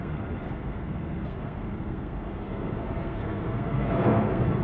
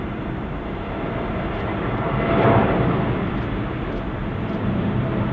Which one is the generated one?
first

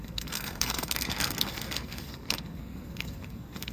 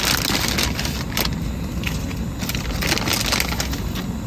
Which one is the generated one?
first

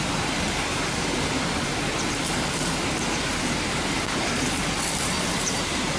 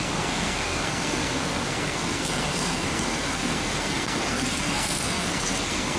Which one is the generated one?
second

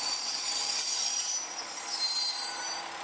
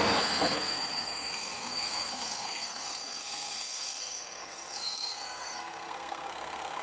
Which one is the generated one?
second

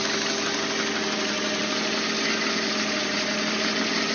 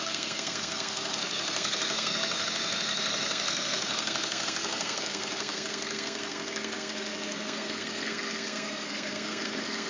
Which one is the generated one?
second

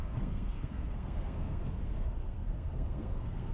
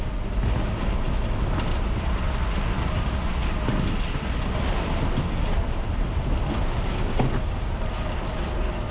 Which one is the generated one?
first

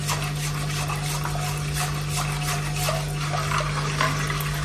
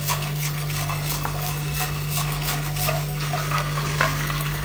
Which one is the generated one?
second